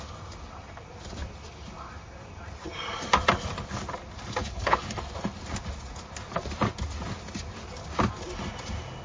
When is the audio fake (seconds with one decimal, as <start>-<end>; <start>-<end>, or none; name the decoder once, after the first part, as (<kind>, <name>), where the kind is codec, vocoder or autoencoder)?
4.4-5.0 (codec, HILCodec)